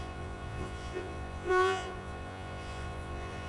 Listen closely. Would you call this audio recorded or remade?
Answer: remade